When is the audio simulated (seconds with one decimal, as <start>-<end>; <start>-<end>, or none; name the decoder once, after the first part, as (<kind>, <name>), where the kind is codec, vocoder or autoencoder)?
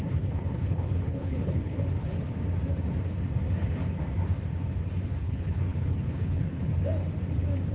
0.0-1.8 (codec, HILCodec); 5.2-6.7